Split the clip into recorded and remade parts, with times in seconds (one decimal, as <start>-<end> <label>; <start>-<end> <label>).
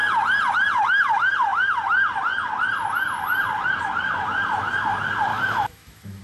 0.0-5.3 recorded; 5.3-6.2 remade